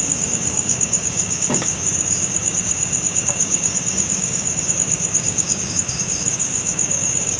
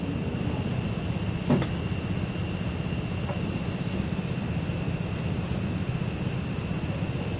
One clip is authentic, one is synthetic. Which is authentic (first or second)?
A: second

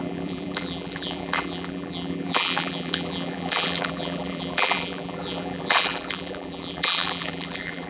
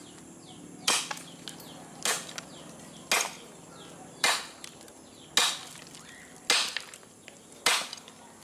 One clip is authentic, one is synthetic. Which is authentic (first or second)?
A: second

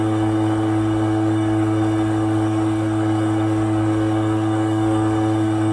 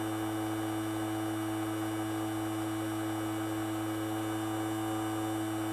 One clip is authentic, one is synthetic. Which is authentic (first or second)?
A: second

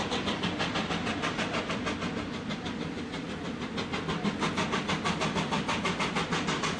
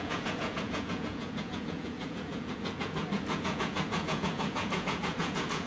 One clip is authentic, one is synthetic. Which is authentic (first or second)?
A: first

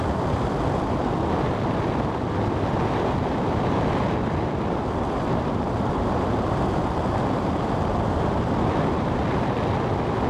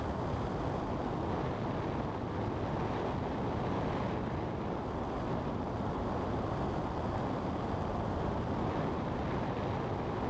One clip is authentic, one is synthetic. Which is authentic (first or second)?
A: second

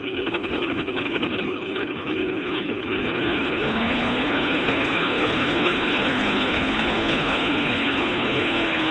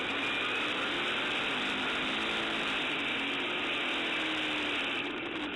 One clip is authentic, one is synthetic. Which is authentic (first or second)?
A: second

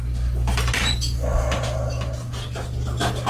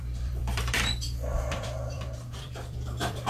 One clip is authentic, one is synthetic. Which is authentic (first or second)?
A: first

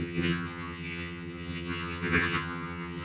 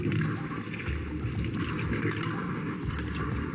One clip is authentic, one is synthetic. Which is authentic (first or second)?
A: second